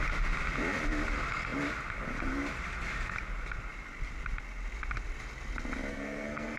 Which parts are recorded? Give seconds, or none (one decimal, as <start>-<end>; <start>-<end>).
0.0-5.9